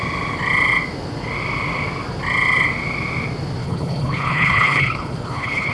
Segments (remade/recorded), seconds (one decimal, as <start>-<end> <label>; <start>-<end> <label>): 0.0-3.6 recorded; 3.6-5.7 remade